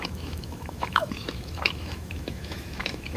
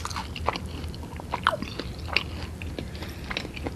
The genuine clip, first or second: second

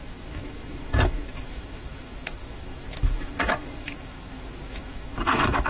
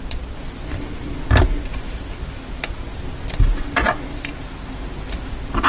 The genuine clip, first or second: second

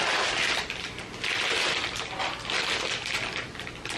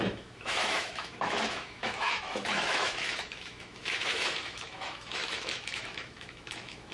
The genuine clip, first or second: first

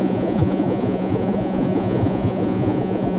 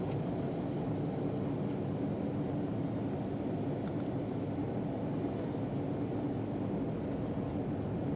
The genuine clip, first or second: second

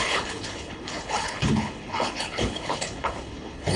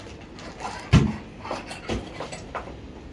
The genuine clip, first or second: second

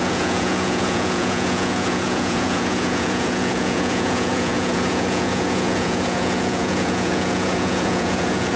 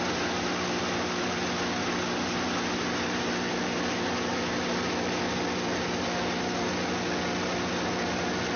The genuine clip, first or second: second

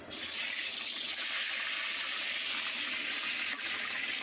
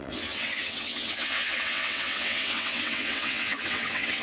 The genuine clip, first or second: first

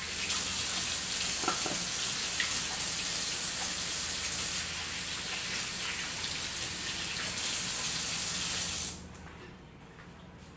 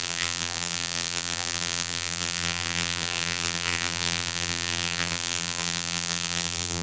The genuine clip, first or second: first